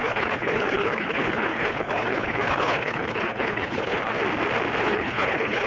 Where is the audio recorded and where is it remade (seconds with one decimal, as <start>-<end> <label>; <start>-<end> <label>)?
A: 0.0-4.2 remade; 4.2-4.8 recorded; 4.8-5.7 remade